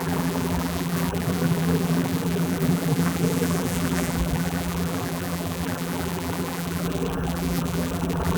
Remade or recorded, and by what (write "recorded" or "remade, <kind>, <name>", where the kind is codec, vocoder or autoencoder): remade, vocoder, BigVGAN v2